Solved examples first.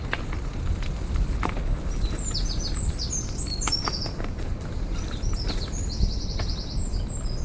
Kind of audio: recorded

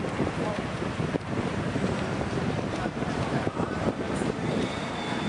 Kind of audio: remade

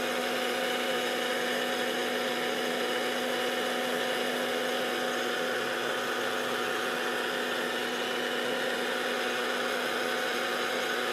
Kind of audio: recorded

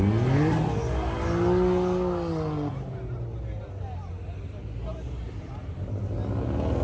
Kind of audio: recorded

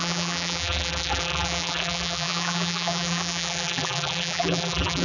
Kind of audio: remade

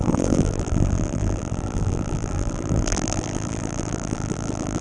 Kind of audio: remade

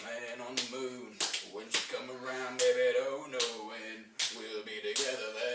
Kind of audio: recorded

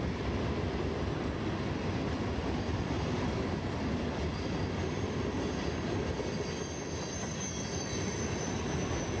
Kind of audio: recorded